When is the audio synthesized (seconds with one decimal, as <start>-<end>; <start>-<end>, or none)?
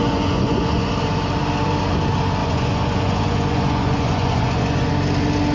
0.0-0.9; 2.4-4.9